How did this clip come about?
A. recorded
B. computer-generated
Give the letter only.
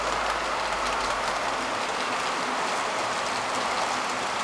A